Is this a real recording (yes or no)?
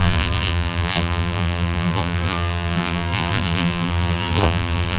no